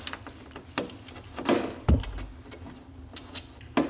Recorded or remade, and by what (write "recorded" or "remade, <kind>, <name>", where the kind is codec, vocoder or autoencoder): recorded